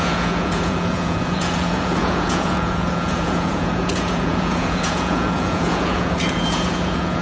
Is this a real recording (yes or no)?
no